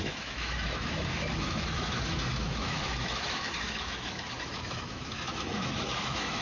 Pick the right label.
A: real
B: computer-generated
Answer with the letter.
B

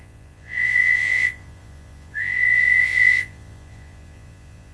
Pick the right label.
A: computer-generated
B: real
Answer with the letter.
A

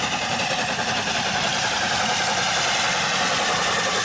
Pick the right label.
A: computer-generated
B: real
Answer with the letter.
B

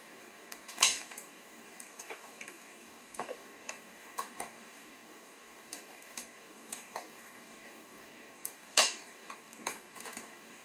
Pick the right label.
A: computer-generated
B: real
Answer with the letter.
A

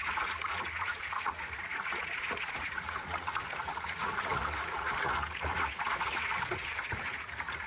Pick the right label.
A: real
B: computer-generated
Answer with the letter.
B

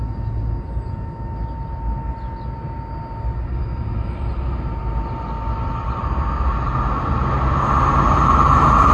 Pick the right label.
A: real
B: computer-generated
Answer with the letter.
A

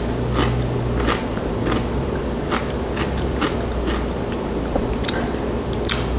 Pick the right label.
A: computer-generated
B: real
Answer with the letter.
B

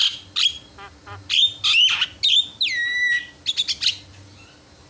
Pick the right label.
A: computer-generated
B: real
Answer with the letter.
B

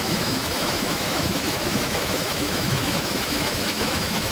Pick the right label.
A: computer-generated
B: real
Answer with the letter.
A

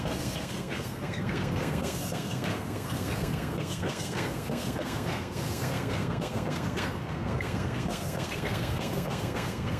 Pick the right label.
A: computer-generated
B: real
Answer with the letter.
A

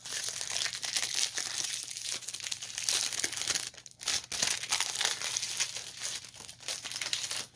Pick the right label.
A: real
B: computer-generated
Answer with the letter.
A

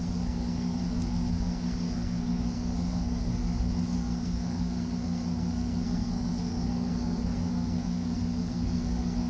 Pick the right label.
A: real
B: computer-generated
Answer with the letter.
B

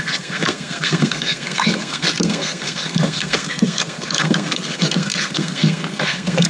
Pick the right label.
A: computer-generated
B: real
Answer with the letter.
A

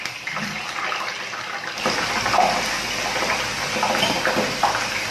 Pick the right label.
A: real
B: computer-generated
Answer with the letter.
A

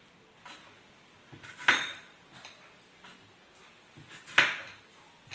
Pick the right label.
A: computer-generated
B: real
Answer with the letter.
B